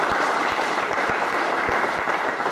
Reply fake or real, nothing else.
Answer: fake